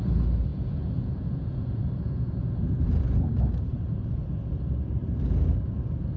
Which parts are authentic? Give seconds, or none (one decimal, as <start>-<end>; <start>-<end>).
0.0-0.5; 4.2-6.2